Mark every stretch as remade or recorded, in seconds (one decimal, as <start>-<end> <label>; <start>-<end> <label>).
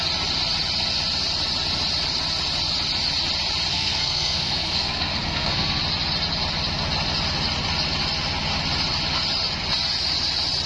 0.0-3.7 recorded; 3.7-5.8 remade; 5.8-10.7 recorded